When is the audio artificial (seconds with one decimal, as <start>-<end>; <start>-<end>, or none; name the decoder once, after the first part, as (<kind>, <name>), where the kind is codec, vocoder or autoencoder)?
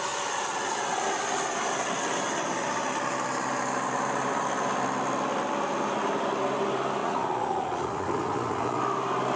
7.0-8.8 (vocoder, Vocos)